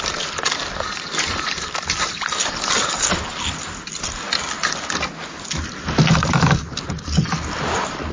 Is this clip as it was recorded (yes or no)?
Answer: yes